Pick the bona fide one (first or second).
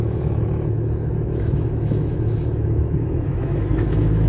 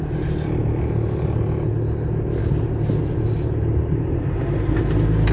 second